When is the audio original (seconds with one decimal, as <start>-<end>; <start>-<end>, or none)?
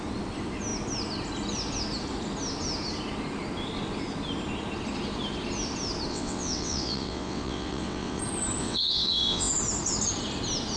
0.0-6.1; 8.2-8.6; 9.5-10.8